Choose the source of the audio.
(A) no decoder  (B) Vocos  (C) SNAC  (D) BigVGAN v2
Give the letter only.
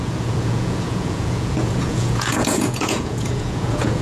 B